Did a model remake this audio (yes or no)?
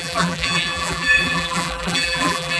yes